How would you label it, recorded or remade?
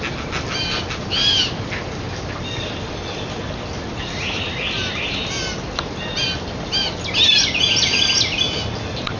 recorded